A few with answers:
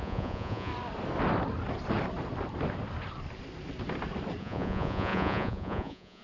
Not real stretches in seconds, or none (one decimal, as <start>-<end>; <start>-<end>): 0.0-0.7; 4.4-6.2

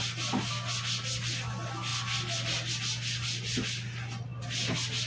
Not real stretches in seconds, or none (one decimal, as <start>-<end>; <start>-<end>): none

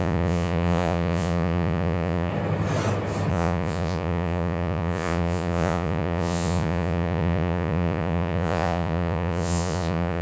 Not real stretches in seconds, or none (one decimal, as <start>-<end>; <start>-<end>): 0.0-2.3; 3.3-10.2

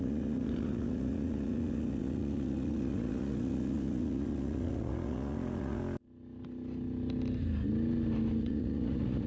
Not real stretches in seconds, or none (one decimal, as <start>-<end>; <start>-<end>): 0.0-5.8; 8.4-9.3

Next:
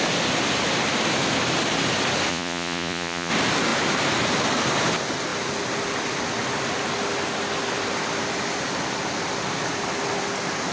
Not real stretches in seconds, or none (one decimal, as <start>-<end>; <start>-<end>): 2.3-3.3